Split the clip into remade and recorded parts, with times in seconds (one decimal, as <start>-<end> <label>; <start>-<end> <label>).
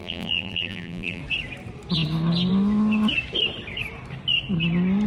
0.0-1.2 remade; 1.2-5.1 recorded